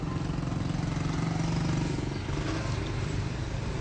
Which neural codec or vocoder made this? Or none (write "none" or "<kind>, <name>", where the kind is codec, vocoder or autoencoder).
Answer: none